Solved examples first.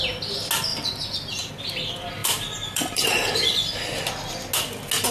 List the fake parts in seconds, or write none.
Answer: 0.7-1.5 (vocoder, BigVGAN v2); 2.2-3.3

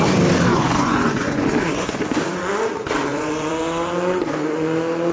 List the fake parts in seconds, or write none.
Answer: 0.5-2.5 (vocoder, Vocos); 3.1-3.9

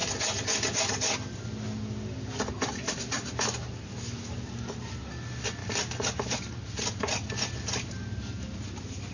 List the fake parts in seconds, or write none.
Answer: none

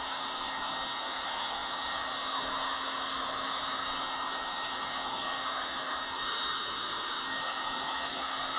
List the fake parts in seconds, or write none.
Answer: none

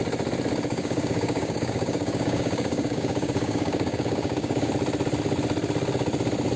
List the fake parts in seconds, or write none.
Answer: 0.7-4.7 (codec, DAC)

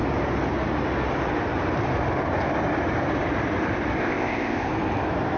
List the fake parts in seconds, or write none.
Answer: 4.0-4.7 (codec, ZipCodec)

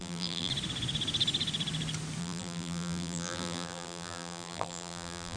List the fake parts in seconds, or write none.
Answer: 0.0-0.5 (vocoder, BigVGAN v2); 2.2-5.4

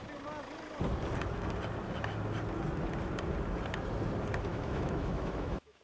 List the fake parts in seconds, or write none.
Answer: 4.5-5.8 (autoencoder, DAC-VAE)